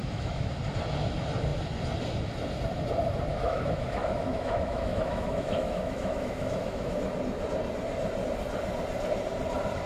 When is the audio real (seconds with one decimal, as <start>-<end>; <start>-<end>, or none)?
0.5-3.3; 7.1-9.9